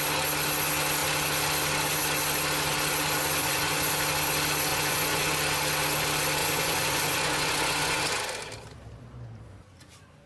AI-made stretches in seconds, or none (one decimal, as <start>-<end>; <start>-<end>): 3.4-3.9; 4.7-5.3; 6.4-8.0